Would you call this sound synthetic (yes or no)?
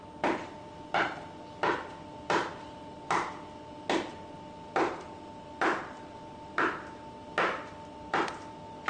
no